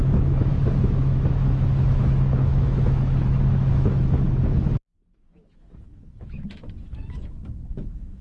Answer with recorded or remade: remade